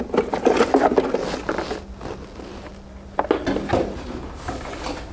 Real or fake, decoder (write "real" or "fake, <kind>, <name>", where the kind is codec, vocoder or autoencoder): real